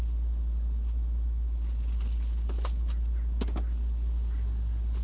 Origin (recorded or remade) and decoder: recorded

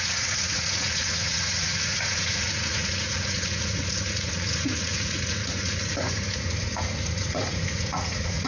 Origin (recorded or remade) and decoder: remade, vocoder, Vocos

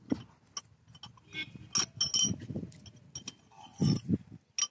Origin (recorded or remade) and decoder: recorded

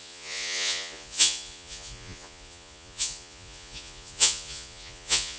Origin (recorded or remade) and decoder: remade, vocoder, Vocos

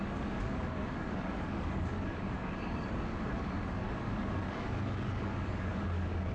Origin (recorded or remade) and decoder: remade, codec, DAC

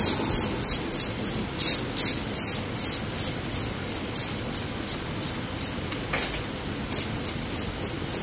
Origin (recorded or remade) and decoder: recorded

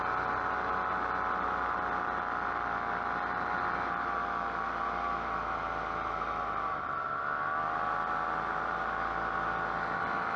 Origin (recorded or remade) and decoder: recorded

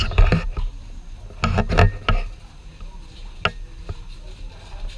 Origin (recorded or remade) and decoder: recorded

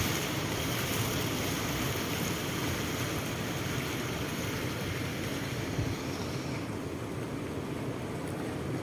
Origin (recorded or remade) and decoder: recorded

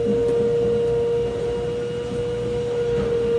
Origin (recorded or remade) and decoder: recorded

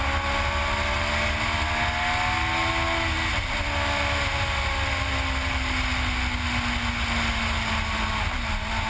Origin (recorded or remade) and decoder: recorded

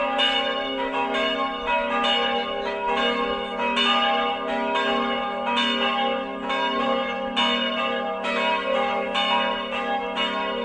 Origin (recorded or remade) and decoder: recorded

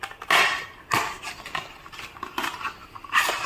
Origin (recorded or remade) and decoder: recorded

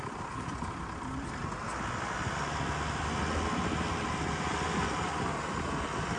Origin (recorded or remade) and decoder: recorded